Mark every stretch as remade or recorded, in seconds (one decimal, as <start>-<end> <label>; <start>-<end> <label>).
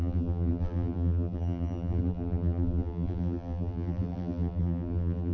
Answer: 0.0-5.3 remade